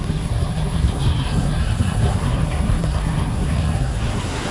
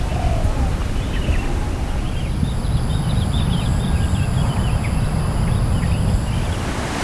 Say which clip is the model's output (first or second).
first